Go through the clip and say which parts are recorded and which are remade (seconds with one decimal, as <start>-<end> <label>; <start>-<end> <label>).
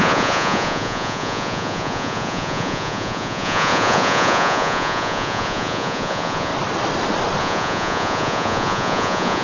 0.0-6.5 remade; 6.5-7.4 recorded; 7.4-9.4 remade